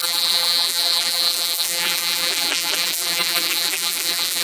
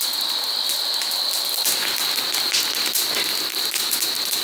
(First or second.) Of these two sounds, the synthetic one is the first